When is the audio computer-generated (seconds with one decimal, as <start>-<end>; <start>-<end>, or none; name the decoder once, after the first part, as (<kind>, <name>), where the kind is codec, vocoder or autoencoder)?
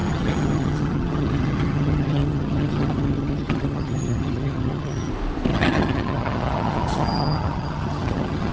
0.0-5.1 (vocoder, HiFi-GAN); 5.5-8.5